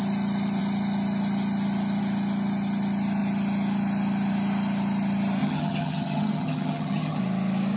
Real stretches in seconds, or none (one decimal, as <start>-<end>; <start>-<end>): 0.0-5.4; 7.2-7.8